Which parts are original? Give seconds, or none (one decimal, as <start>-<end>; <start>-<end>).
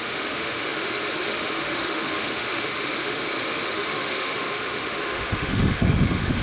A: none